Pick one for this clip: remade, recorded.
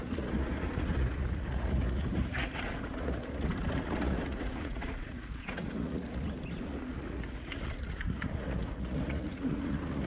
remade